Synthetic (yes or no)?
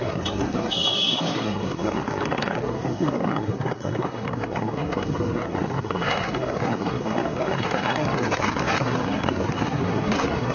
yes